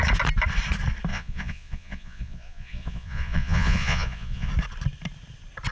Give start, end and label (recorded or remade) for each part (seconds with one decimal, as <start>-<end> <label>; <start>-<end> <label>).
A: 0.0-1.1 recorded; 1.1-4.5 remade; 4.5-5.7 recorded